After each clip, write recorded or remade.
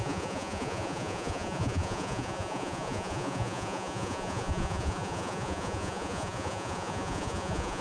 remade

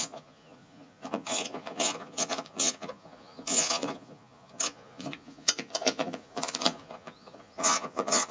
remade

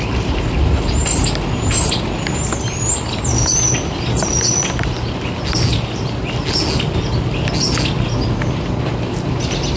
recorded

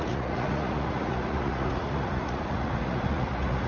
remade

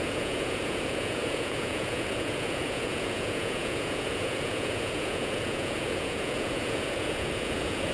remade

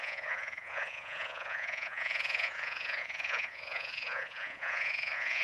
remade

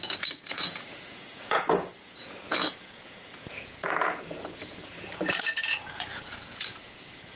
remade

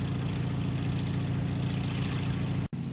recorded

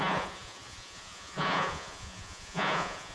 remade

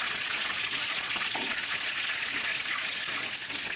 remade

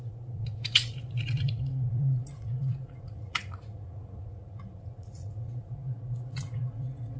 remade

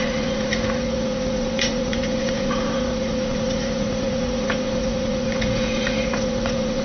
remade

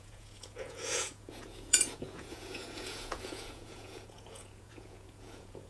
remade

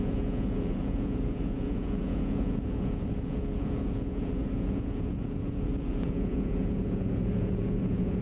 remade